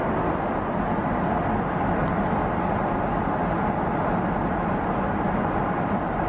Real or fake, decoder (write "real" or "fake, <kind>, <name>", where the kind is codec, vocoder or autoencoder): real